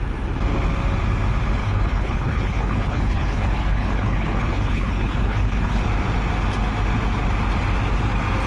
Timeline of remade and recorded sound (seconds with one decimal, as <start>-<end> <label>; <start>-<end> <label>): 0.0-1.6 recorded; 1.6-5.8 remade; 5.8-8.5 recorded